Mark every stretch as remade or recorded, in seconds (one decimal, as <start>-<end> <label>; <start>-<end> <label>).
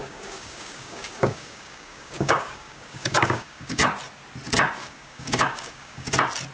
0.0-3.9 remade; 3.9-4.8 recorded; 4.8-6.1 remade; 6.1-6.5 recorded